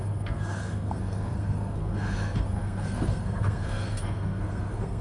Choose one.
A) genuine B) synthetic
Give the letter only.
B